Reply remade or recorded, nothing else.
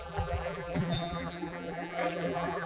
remade